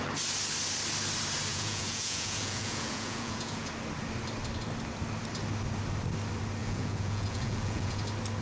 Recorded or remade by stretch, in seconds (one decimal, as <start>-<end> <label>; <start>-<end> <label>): 0.0-1.5 recorded; 1.5-3.7 remade; 3.7-6.6 recorded; 6.6-8.0 remade; 8.0-8.4 recorded